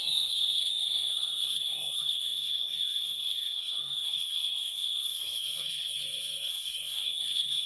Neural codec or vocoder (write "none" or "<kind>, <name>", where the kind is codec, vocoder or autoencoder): codec, SNAC